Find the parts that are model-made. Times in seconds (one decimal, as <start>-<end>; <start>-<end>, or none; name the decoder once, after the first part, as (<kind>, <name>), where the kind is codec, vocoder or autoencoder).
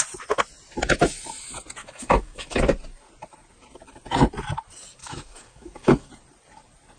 1.8-2.6 (autoencoder, DAC-VAE); 5.0-6.1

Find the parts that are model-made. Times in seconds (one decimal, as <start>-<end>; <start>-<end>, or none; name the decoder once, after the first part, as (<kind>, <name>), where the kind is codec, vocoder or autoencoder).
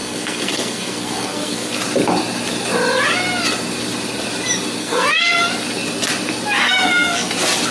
0.0-1.7 (codec, SNAC); 4.8-5.4; 6.6-7.3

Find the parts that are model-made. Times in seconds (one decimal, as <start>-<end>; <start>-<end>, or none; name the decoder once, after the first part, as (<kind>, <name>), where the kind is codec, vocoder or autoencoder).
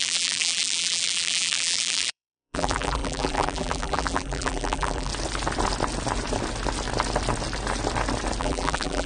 0.0-5.1 (vocoder, BigVGAN v2); 8.4-9.1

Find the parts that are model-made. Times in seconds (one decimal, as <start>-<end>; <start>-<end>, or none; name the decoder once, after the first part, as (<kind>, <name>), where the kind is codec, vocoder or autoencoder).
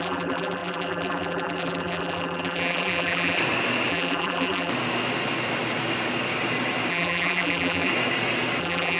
0.0-3.4 (vocoder, BigVGAN v2); 3.9-4.7; 6.9-7.9; 8.6-9.0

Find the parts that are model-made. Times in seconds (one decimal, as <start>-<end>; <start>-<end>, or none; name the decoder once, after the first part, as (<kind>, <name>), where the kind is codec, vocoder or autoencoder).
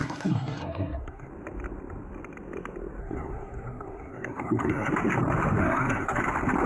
0.0-1.3 (codec, SNAC); 3.0-4.9; 5.6-6.2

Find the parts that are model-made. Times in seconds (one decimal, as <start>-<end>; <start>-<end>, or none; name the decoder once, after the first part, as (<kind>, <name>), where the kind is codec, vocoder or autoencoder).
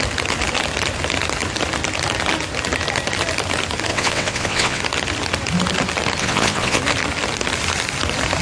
3.9-4.8 (vocoder, WaveNeXt); 6.2-6.8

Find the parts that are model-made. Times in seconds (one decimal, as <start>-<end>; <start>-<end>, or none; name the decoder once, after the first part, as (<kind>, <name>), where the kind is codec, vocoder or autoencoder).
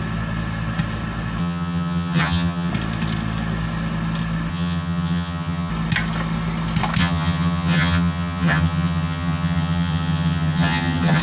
1.4-2.7 (vocoder, HiFi-GAN); 4.5-5.7; 7.0-11.2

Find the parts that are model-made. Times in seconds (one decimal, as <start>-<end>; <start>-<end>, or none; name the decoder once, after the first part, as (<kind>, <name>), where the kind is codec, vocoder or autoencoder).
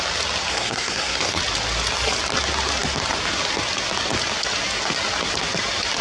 0.5-1.4 (codec, SNAC)